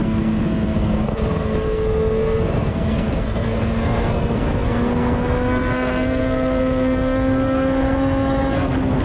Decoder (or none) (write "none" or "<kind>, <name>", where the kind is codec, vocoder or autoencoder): codec, SNAC